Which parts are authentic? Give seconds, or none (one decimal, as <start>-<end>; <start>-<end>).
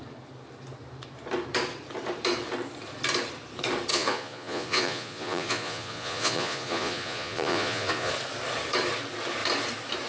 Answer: 0.0-3.9; 8.1-10.1